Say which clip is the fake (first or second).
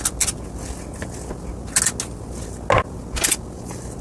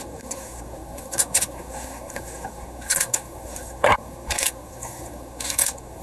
second